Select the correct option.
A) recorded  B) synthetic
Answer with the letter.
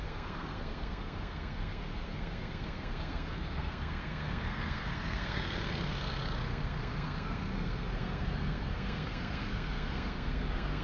B